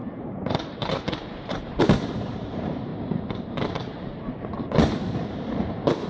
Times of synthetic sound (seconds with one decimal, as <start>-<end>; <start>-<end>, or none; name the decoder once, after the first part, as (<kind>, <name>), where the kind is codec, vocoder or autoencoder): 0.0-2.9 (vocoder, BigVGAN v2); 5.5-6.1